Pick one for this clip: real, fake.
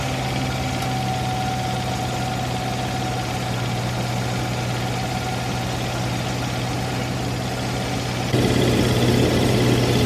real